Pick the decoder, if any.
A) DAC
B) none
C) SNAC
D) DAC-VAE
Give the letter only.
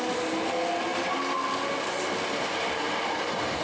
B